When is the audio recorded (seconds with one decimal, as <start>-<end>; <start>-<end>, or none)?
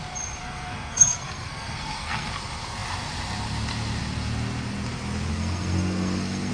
0.0-0.4; 2.3-5.3